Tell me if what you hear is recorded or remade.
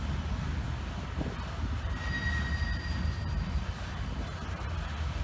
recorded